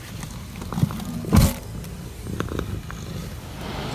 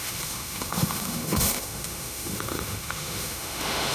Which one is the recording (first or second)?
first